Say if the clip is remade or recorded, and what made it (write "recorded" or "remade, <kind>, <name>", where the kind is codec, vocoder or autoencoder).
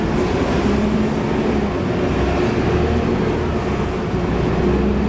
recorded